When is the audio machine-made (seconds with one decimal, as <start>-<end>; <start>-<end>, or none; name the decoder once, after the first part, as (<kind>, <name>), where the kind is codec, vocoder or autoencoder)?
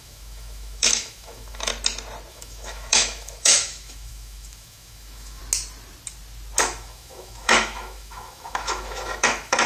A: 0.0-1.7 (autoencoder, DAC-VAE); 2.3-5.4; 6.6-9.7